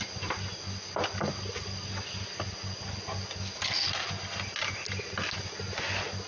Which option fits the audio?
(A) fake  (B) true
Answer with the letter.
B